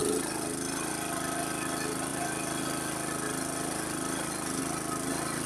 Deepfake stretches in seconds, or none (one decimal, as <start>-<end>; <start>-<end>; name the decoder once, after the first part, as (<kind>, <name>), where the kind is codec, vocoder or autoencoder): none